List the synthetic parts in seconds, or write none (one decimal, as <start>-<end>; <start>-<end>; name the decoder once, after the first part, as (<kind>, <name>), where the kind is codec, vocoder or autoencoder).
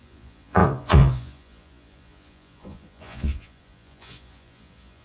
0.0-5.0 (vocoder, Vocos)